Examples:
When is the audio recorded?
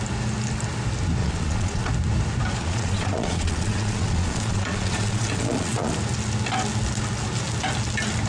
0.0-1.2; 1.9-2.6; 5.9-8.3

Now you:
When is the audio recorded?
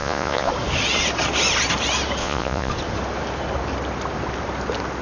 0.5-2.2; 2.7-5.0